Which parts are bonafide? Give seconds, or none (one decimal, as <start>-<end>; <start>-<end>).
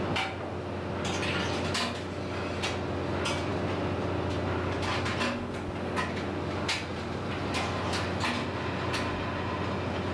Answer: 0.0-6.9; 7.9-10.1